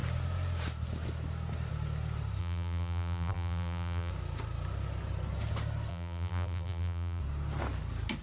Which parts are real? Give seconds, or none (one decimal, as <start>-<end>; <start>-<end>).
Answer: 0.0-2.4; 4.1-5.9; 7.2-8.2